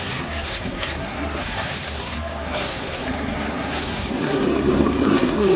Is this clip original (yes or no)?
no